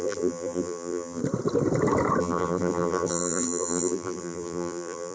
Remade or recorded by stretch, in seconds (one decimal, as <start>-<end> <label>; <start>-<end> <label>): 0.0-1.2 remade; 1.2-2.2 recorded; 2.2-5.1 remade